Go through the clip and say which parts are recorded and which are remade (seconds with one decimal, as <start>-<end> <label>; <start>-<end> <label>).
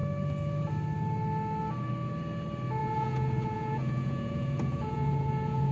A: 0.0-2.8 recorded; 2.8-5.7 remade